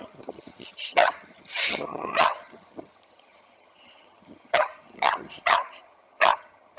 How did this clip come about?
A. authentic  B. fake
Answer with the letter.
B